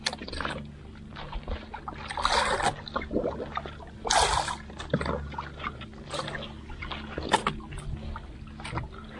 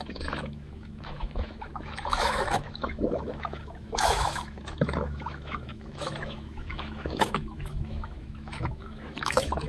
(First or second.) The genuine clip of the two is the first